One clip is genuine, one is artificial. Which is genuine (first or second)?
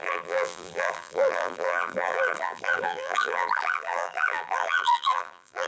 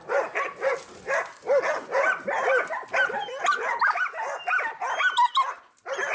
second